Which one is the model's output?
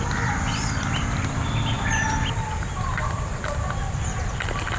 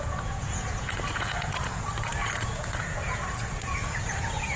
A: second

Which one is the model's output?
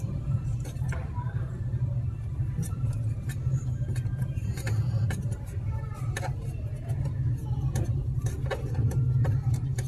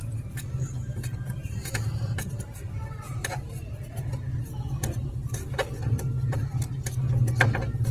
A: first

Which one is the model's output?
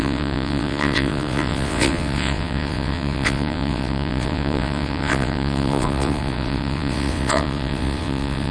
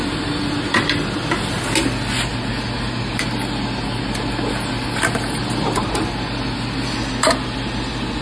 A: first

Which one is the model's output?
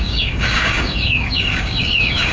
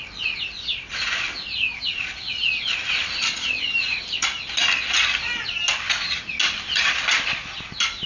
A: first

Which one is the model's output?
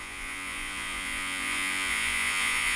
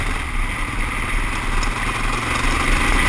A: first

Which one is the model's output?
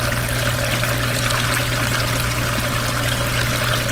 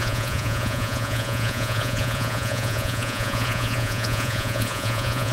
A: second